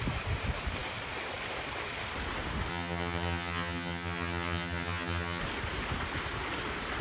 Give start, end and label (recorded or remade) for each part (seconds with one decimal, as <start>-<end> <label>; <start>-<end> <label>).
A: 0.0-2.7 recorded; 2.7-5.4 remade; 5.4-7.0 recorded